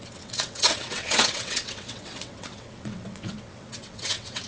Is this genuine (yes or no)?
no